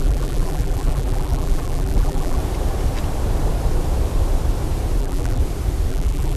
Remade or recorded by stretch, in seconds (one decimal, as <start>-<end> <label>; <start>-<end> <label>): 0.0-2.4 remade; 2.4-5.0 recorded; 5.0-5.4 remade; 5.4-5.9 recorded; 5.9-6.4 remade